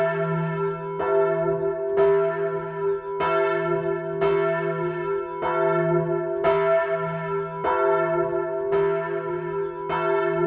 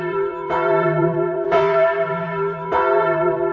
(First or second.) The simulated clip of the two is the second